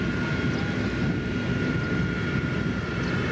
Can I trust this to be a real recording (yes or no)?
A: yes